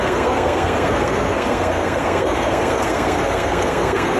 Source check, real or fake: fake